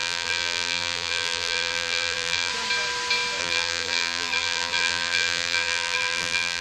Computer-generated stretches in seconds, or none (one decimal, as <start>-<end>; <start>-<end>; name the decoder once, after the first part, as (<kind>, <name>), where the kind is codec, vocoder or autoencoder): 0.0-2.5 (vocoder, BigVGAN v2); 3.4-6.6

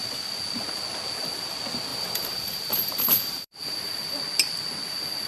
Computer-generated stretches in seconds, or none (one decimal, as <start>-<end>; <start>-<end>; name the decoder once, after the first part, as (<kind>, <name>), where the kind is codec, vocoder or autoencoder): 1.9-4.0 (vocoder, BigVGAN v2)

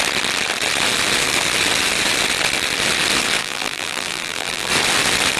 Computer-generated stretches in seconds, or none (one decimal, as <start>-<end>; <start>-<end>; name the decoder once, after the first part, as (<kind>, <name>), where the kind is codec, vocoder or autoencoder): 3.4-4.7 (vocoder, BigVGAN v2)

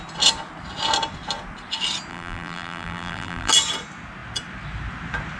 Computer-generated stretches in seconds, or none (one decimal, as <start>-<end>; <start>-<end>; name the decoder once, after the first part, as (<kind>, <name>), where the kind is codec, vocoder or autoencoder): 2.1-3.5 (vocoder, BigVGAN v2)

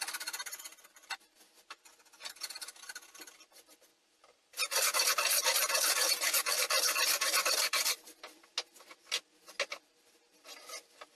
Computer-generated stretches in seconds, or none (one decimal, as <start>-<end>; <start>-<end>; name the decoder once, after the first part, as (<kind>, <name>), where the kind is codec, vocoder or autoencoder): 3.9-8.0 (vocoder, BigVGAN v2)